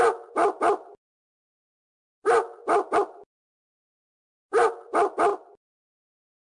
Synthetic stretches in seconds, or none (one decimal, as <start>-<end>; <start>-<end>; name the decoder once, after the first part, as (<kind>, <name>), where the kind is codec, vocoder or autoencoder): none